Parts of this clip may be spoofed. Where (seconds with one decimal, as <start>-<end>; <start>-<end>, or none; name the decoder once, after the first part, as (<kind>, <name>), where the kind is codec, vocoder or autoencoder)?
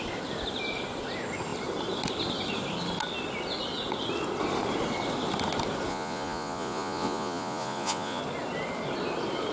5.9-8.2 (vocoder, Vocos)